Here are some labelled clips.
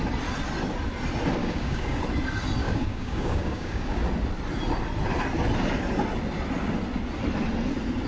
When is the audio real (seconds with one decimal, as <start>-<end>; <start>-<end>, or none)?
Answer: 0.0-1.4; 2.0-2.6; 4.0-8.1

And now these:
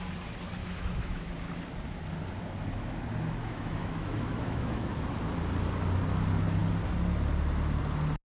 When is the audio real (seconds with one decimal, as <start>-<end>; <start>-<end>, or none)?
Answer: 0.0-0.6; 1.3-3.4; 5.1-8.3

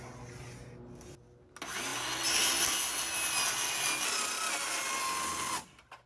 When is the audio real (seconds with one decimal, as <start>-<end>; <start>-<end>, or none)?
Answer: 0.0-6.1

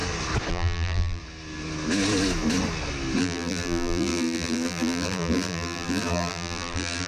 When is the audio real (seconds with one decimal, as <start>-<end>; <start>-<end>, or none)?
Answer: 0.0-0.5; 1.2-3.2

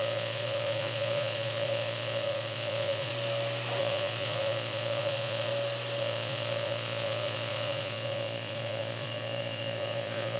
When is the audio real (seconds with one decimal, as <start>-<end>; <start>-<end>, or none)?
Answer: 3.1-3.8; 5.5-6.0

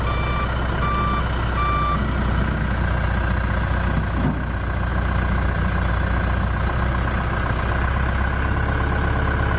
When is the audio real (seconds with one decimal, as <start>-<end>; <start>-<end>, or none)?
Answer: 0.0-9.6

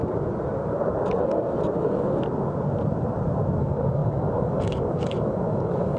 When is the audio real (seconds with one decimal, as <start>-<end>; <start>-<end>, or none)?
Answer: 0.0-3.6